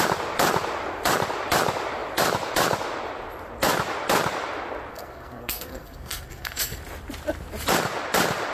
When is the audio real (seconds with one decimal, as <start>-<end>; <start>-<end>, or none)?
0.0-4.9; 6.8-8.5